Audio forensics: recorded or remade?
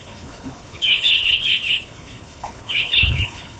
remade